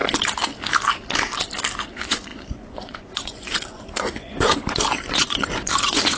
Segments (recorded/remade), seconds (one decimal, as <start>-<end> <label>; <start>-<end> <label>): 0.0-1.9 recorded; 1.9-6.2 remade

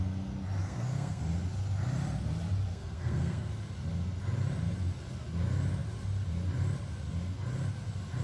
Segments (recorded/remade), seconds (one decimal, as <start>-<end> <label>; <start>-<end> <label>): 0.0-0.6 recorded; 0.6-1.2 remade; 1.2-2.7 recorded; 2.7-3.5 remade; 3.5-8.2 recorded

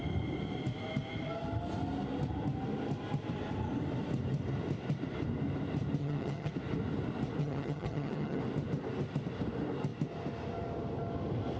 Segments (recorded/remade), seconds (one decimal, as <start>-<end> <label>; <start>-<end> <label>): 0.0-6.0 recorded; 6.0-6.5 remade; 6.5-7.4 recorded; 7.4-8.4 remade; 8.4-11.6 recorded

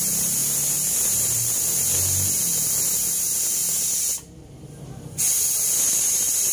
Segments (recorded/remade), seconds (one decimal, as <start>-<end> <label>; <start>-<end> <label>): 0.0-6.5 recorded